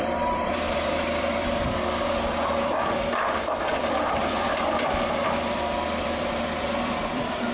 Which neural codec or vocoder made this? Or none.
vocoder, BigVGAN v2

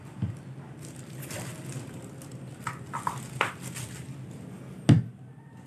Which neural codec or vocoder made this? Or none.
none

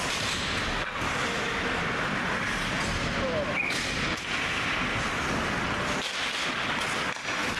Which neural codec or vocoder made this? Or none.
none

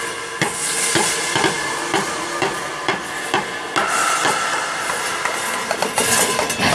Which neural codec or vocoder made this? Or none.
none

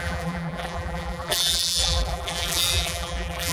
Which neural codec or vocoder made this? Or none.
vocoder, BigVGAN v2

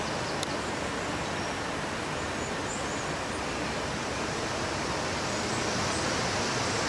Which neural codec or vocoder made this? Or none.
none